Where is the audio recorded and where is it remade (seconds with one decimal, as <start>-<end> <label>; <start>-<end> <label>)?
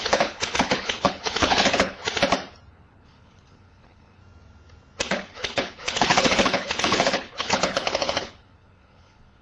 0.0-2.0 remade; 2.0-2.7 recorded; 2.7-4.2 remade; 4.2-5.1 recorded; 5.1-9.4 remade